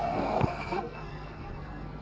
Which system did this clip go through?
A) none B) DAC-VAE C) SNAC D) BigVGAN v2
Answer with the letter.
C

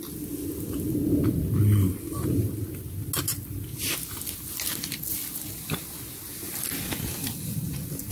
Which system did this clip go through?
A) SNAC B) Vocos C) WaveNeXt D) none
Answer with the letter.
D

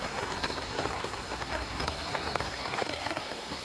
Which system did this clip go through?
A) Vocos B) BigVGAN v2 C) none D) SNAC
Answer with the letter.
D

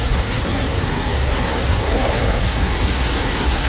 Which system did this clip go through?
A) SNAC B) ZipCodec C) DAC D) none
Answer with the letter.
A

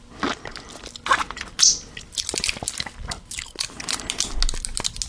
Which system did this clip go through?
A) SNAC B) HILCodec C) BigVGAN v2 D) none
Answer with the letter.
D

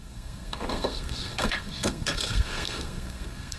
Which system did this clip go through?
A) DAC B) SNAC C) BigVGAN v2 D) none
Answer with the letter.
B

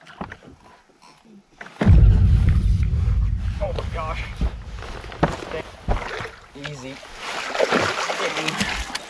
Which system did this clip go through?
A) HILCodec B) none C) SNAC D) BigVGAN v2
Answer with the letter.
B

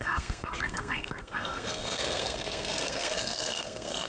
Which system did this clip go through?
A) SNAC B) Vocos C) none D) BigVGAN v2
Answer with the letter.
A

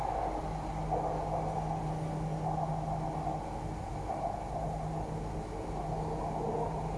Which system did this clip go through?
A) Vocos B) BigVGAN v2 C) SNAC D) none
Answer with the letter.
D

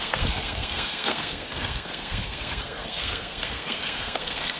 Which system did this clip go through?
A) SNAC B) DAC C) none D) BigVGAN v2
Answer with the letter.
A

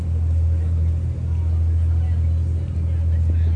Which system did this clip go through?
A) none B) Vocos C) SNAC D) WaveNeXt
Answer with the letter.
A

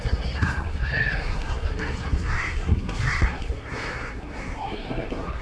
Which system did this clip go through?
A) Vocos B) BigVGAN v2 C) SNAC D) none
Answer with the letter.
C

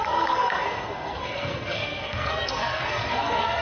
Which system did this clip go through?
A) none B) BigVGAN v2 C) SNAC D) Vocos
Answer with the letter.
C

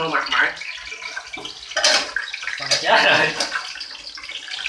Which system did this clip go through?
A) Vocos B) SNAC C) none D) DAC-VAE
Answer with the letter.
C